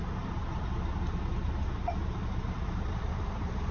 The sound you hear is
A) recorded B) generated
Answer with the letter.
B